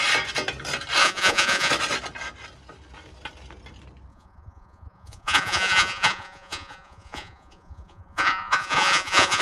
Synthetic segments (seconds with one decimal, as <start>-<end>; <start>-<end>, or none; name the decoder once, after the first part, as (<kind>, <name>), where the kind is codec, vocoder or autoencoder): 1.0-1.7 (vocoder, Vocos); 4.1-9.4